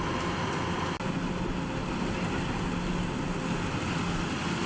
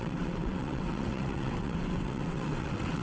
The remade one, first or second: second